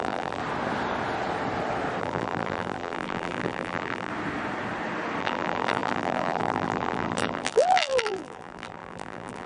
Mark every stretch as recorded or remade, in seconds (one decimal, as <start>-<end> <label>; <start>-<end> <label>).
0.0-0.4 remade; 0.4-2.0 recorded; 2.0-4.1 remade; 4.1-5.2 recorded; 5.2-9.5 remade

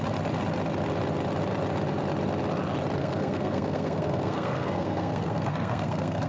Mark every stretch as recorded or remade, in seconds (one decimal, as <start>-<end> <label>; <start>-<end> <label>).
0.0-3.0 recorded; 3.0-6.3 remade

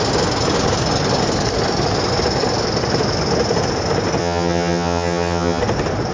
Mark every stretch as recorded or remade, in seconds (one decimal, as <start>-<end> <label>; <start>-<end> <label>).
0.0-4.2 recorded; 4.2-5.6 remade; 5.6-6.1 recorded

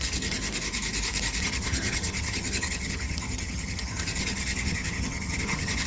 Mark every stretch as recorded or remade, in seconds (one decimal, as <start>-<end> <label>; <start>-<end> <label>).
0.0-0.4 remade; 0.4-1.4 recorded; 1.4-5.9 remade

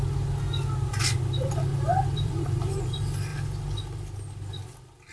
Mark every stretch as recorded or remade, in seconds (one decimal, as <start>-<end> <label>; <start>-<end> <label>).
0.0-1.7 recorded; 1.7-2.8 remade; 2.8-5.1 recorded

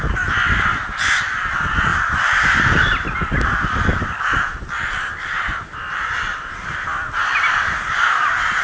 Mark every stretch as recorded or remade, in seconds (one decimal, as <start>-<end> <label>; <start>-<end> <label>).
0.0-8.6 remade